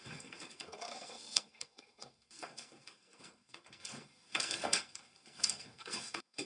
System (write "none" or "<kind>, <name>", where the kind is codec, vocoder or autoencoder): codec, SNAC